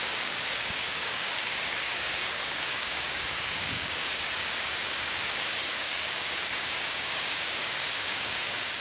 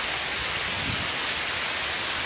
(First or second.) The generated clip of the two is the first